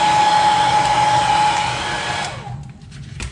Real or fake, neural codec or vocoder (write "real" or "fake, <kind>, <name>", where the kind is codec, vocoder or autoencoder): real